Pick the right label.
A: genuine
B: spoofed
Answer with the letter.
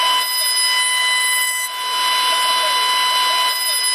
A